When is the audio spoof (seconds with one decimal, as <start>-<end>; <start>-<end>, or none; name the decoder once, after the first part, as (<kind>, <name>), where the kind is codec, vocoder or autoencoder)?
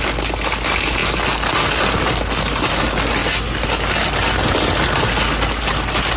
none